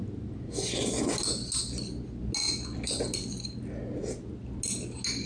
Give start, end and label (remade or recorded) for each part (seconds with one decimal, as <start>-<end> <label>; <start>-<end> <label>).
0.0-5.3 recorded